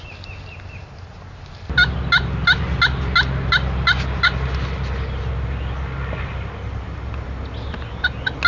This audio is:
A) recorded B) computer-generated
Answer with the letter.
A